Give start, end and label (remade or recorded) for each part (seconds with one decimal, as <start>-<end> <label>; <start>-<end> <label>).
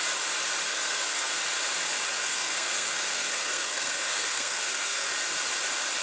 0.0-0.7 recorded; 0.7-1.4 remade; 1.4-2.2 recorded; 2.2-5.1 remade; 5.1-6.0 recorded